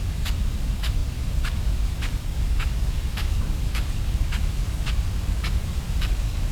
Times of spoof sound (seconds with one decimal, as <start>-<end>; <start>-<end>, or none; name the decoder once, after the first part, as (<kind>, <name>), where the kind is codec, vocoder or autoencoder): 0.0-6.5 (codec, DAC)